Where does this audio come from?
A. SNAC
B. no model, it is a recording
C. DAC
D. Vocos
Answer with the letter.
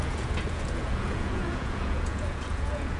D